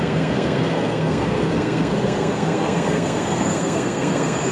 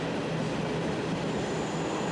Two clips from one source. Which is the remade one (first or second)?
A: first